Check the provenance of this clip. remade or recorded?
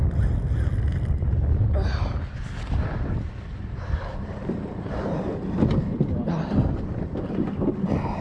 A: recorded